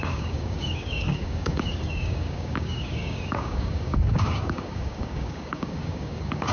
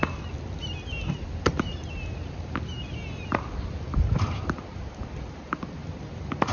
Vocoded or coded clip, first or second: first